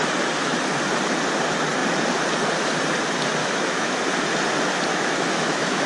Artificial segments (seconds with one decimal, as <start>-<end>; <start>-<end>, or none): 3.4-4.0; 4.9-5.9

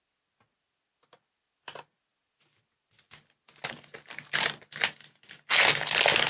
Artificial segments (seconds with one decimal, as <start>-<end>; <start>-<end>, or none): none

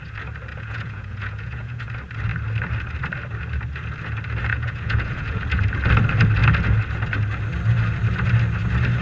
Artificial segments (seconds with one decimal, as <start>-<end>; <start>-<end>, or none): 0.5-1.9; 4.5-5.4

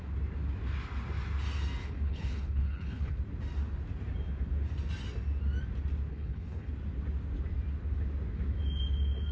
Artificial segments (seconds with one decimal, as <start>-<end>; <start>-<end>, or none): 1.8-3.2; 6.1-6.7